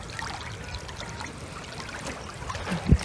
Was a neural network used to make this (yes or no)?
no